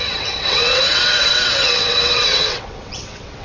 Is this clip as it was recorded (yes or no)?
no